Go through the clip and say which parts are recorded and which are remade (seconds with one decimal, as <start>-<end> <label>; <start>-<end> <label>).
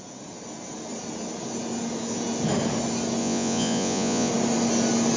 0.0-3.2 recorded; 3.2-4.3 remade; 4.3-5.2 recorded